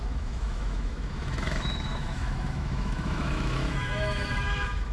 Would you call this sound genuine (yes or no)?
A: no